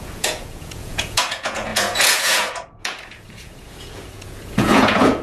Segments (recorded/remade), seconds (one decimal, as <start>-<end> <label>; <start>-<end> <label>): 0.0-5.2 remade